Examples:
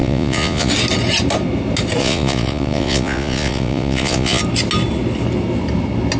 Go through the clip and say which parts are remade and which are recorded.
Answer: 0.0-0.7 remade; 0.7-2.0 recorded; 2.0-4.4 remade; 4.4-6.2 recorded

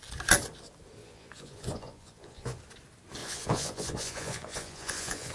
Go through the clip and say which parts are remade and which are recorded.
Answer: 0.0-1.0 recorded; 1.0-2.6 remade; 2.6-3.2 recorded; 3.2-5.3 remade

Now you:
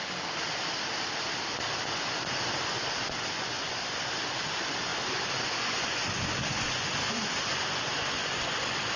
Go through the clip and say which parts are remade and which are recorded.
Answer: 0.0-1.9 recorded; 1.9-9.0 remade

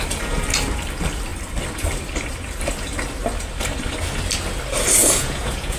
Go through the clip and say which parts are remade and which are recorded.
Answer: 0.0-5.0 recorded; 5.0-5.8 remade

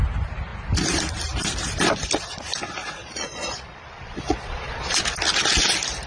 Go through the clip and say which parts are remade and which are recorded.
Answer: 0.0-2.8 recorded; 2.8-5.0 remade; 5.0-6.1 recorded

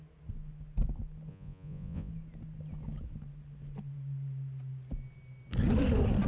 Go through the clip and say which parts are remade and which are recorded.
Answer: 0.0-1.3 recorded; 1.3-2.1 remade; 2.1-6.3 recorded